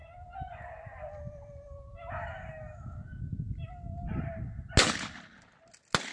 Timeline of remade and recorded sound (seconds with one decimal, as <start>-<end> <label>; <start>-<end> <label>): 0.0-6.1 recorded